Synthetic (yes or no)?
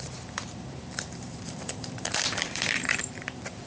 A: yes